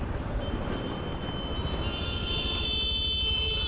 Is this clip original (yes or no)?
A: yes